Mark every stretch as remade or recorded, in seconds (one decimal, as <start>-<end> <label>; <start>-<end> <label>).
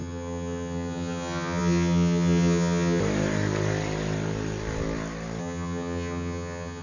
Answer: 0.0-3.0 remade; 3.0-5.4 recorded; 5.4-6.8 remade